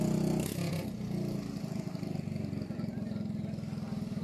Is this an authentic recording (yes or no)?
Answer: yes